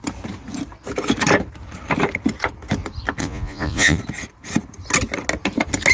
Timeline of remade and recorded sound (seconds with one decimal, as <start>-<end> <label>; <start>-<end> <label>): 0.0-3.2 recorded; 3.2-4.0 remade; 4.0-5.9 recorded